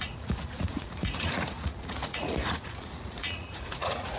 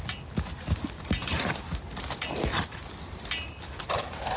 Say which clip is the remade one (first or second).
first